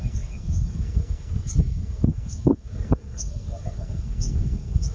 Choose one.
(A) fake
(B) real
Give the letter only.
A